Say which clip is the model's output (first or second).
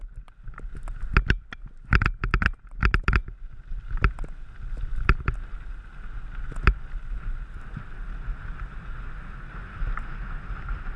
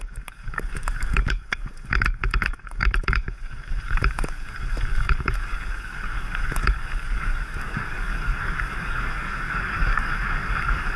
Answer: second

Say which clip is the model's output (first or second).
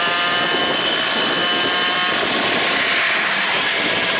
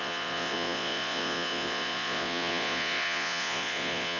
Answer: second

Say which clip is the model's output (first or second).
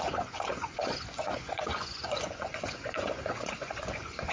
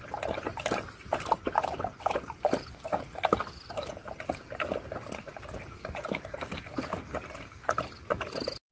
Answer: first